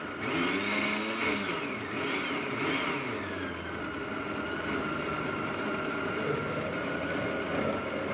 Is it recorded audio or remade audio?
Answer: recorded